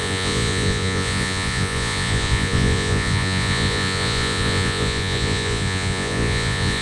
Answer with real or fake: fake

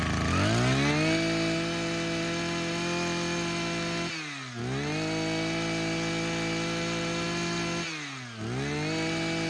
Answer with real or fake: real